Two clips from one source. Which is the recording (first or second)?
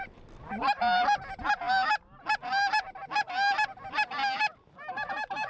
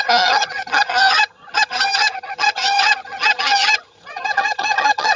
first